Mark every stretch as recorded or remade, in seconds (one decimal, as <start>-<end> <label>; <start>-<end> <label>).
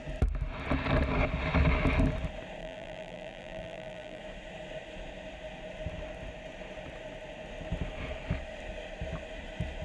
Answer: 0.0-2.6 recorded; 2.6-4.2 remade; 4.2-9.8 recorded